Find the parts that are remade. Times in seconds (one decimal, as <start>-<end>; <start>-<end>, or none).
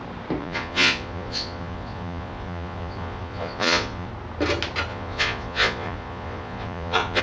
0.4-4.1; 4.9-7.2